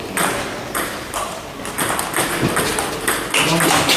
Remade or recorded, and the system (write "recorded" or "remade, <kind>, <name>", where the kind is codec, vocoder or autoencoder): recorded